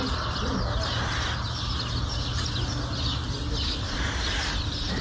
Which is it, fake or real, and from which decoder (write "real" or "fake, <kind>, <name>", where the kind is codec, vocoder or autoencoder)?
real